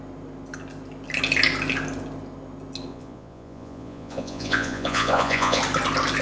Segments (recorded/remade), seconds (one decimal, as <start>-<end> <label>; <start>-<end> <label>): 0.0-2.9 recorded; 2.9-5.6 remade; 5.6-6.2 recorded

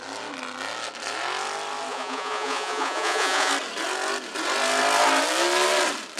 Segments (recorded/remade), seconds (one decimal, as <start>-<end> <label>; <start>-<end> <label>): 0.0-1.9 recorded; 1.9-3.5 remade; 3.5-6.2 recorded

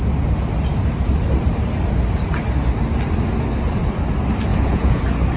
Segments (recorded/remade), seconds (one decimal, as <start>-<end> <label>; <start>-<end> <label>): 0.0-4.5 recorded; 4.5-5.0 remade; 5.0-5.4 recorded

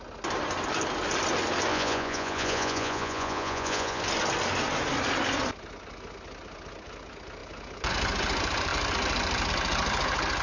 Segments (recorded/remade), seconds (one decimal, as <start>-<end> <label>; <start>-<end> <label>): 0.0-1.7 recorded; 1.7-4.0 remade; 4.0-10.4 recorded

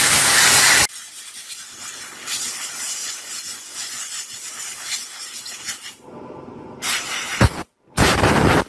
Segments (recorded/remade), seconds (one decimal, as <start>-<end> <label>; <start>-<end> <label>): 0.0-3.0 recorded; 3.0-4.1 remade; 4.1-8.7 recorded